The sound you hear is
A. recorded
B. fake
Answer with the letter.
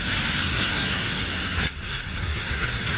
B